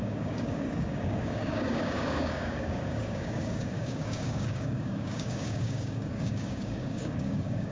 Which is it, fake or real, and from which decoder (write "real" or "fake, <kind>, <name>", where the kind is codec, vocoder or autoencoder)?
fake, codec, DAC